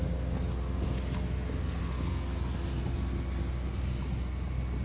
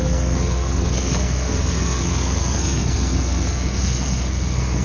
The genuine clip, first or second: first